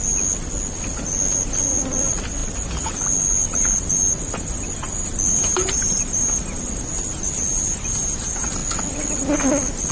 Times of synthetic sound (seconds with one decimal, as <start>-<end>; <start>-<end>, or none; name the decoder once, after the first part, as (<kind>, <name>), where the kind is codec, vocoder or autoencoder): none